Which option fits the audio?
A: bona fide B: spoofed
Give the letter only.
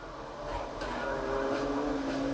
A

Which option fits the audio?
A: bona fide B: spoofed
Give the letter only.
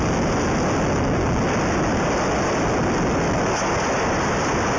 A